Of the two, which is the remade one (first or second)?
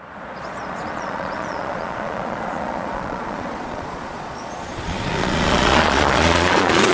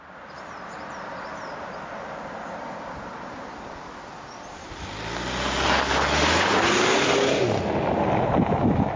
first